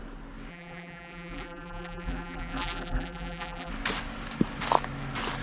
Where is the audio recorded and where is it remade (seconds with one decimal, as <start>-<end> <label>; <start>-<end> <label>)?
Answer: 0.0-0.5 recorded; 0.5-3.7 remade; 3.7-5.4 recorded